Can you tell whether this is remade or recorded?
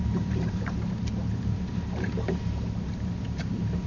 remade